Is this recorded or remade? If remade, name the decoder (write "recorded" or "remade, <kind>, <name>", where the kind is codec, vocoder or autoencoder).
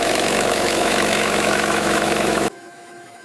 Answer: remade, autoencoder, DAC-VAE